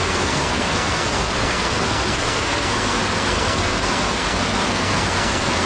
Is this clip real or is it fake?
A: fake